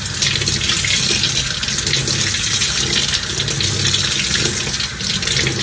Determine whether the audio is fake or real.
real